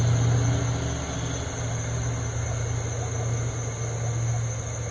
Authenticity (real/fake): real